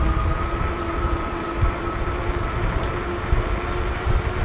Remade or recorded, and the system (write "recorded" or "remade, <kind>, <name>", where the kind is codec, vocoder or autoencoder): recorded